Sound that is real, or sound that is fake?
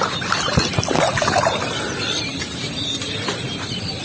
real